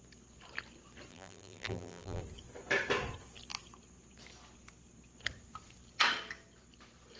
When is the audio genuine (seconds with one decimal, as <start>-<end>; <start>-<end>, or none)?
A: 0.0-1.1; 2.2-7.2

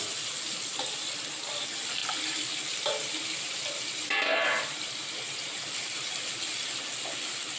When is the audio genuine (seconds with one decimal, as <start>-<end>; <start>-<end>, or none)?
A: 0.0-2.0; 6.3-7.6

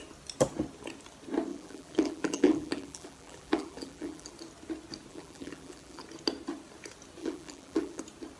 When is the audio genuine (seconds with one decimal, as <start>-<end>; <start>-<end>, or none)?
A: 0.0-1.5; 4.3-5.1; 6.0-7.2; 8.0-8.4